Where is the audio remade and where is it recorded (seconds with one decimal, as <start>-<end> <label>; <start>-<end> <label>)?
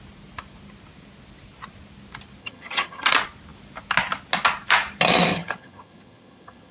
0.0-2.4 recorded; 2.4-3.1 remade; 3.1-5.3 recorded; 5.3-6.7 remade